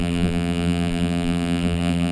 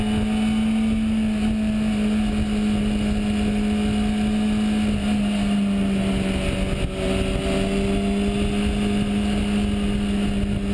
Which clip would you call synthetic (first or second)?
first